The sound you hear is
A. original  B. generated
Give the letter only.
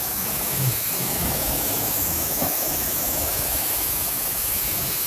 B